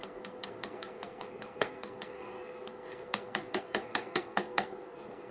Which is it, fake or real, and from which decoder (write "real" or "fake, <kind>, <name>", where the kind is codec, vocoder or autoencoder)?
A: fake, codec, SNAC